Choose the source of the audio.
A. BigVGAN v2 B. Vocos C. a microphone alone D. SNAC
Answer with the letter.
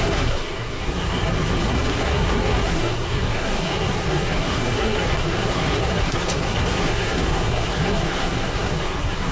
D